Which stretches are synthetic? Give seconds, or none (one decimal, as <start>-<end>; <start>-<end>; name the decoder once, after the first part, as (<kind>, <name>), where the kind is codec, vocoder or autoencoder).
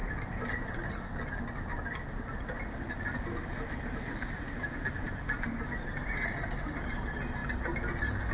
none